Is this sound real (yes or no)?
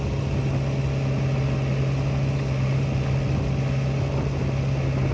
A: yes